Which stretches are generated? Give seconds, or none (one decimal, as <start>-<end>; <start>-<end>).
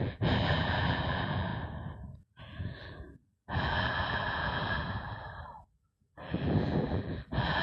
0.0-1.5; 2.4-7.6